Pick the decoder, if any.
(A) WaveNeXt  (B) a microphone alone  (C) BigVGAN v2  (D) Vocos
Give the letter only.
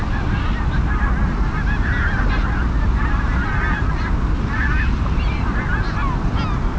B